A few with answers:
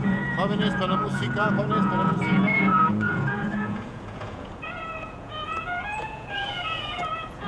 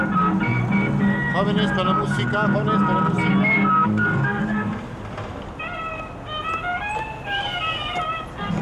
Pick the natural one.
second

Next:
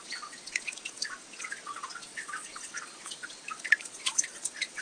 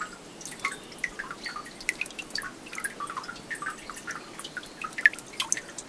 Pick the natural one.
second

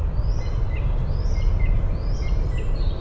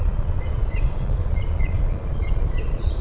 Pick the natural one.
first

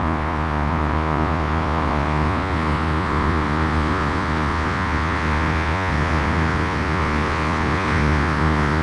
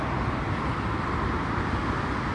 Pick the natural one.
second